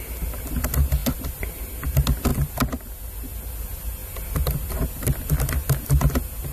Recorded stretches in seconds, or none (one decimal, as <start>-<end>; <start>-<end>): 0.0-6.5